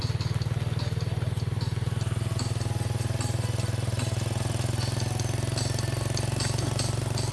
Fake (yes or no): no